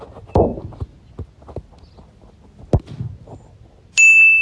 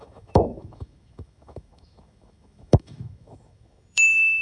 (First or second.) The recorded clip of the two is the first